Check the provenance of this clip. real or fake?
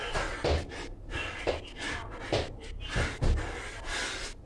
real